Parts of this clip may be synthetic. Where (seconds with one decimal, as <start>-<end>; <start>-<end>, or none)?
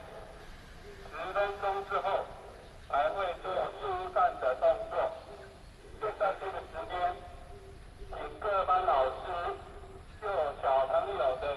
3.4-4.0; 5.8-6.5